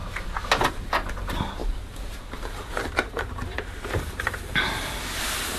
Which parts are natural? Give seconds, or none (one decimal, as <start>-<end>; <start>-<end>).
0.0-1.6; 5.0-5.6

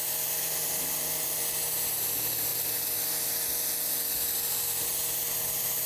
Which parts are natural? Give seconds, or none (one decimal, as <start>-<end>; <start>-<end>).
0.0-5.9

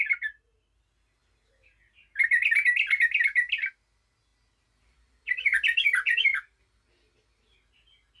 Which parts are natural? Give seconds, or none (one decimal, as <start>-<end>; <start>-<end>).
0.0-8.2

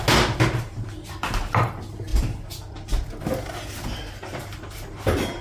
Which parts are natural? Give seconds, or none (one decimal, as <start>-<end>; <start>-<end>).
0.0-5.4

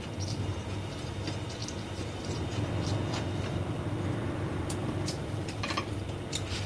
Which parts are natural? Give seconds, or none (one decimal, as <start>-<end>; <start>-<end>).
0.0-1.6; 2.7-4.8; 6.0-6.7

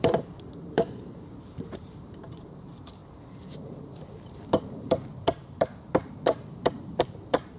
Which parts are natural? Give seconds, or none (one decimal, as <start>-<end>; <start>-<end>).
none

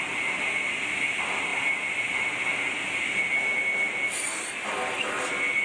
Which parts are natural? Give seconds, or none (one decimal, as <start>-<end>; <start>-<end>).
0.0-5.6

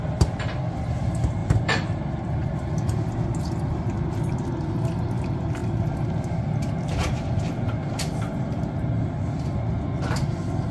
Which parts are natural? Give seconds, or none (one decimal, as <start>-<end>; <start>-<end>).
0.0-1.4; 2.1-10.7